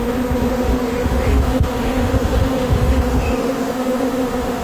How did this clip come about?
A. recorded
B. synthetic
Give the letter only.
B